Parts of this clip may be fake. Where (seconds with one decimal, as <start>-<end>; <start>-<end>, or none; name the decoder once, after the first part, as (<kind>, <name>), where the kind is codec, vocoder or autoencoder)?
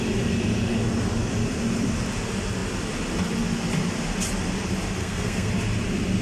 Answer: 5.0-5.5 (codec, SNAC)